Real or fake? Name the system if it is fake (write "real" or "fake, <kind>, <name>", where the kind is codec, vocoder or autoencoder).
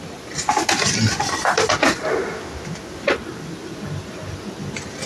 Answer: real